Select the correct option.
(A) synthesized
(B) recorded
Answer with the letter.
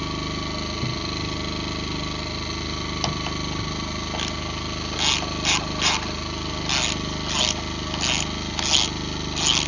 B